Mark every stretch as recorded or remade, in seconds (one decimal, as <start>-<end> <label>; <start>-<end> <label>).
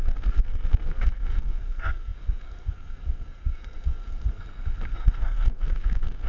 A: 0.0-6.3 remade